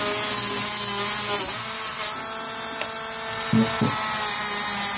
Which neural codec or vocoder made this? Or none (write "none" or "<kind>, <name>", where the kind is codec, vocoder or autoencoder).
none